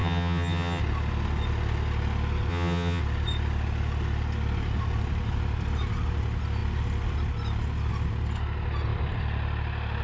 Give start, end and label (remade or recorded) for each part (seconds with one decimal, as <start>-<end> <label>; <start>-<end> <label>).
0.0-0.8 remade; 0.8-2.5 recorded; 2.5-3.0 remade; 3.0-10.0 recorded